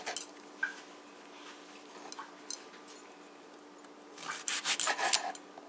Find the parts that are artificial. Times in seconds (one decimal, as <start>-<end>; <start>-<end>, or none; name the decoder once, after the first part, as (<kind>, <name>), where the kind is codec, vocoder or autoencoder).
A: none